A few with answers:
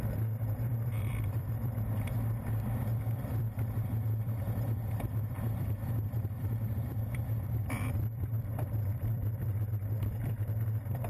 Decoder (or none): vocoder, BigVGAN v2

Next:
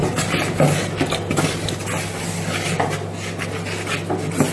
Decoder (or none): none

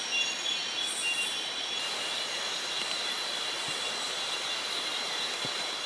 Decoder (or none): none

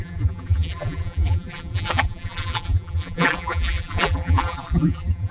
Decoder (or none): vocoder, BigVGAN v2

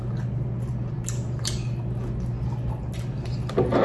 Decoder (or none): none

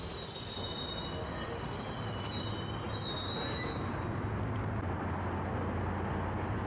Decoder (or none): none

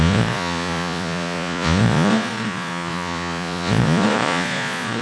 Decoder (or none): vocoder, Vocos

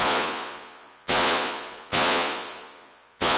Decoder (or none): vocoder, Vocos